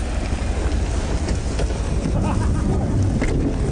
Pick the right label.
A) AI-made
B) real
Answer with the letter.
B